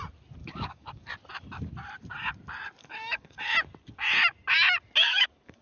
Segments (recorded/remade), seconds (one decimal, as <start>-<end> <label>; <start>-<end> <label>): 0.0-0.4 recorded; 0.4-1.1 remade; 1.1-2.8 recorded; 2.8-3.4 remade; 3.4-5.0 recorded; 5.0-5.6 remade